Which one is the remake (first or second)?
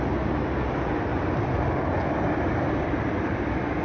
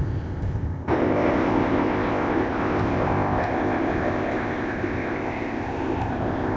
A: second